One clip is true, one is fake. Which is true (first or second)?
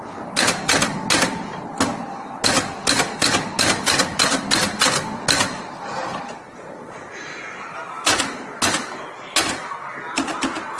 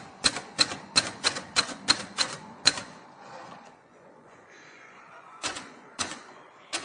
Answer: first